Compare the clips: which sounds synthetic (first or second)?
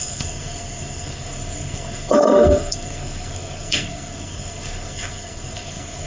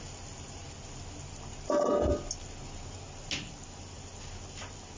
first